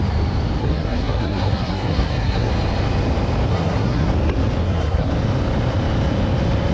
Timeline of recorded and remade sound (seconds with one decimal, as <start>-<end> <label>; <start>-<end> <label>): 0.0-0.6 recorded; 0.6-2.5 remade; 2.5-3.5 recorded; 3.5-4.1 remade; 4.1-4.6 recorded; 4.6-5.1 remade; 5.1-6.7 recorded